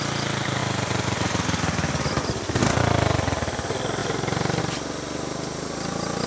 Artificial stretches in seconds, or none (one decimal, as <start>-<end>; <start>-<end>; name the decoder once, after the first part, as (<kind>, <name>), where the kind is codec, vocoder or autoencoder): 4.0-4.6 (vocoder, BigVGAN v2)